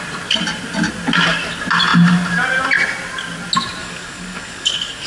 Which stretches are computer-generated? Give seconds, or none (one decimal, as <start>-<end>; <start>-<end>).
3.8-5.1